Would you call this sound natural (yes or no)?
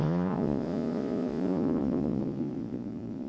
no